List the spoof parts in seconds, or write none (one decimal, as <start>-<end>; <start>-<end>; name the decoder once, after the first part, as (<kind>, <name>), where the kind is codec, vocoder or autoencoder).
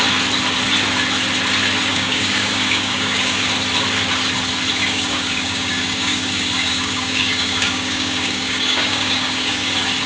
1.9-3.5 (codec, DAC); 4.8-9.7